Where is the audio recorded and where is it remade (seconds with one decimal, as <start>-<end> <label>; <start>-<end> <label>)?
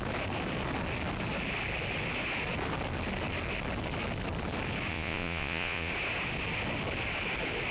0.0-4.9 recorded; 4.9-5.9 remade; 5.9-7.7 recorded